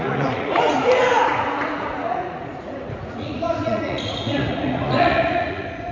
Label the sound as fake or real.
fake